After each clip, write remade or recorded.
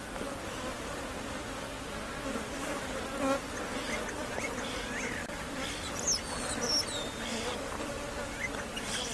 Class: recorded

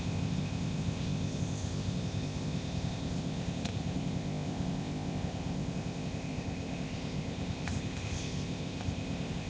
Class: remade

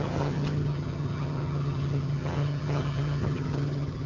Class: remade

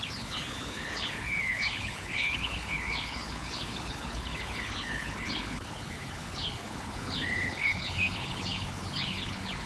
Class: remade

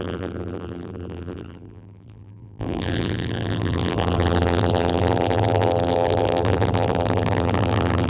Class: remade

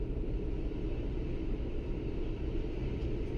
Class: recorded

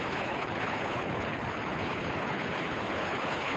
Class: remade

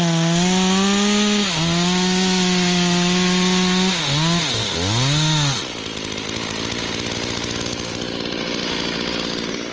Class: recorded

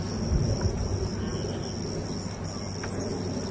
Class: recorded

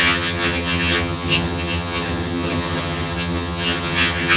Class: remade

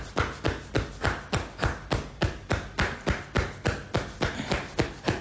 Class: recorded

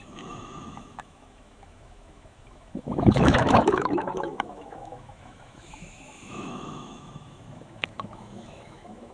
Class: remade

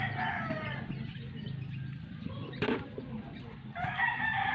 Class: recorded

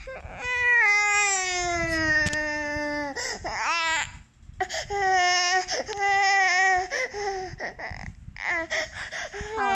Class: recorded